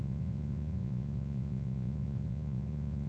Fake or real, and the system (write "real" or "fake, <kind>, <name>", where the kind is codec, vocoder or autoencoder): fake, vocoder, Vocos